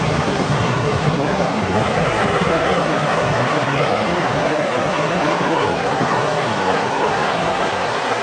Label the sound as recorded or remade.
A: remade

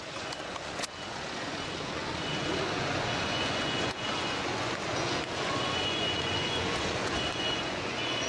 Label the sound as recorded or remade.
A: remade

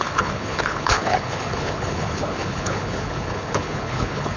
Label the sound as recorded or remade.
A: remade